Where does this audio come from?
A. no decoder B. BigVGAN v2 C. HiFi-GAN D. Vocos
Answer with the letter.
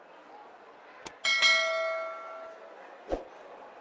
A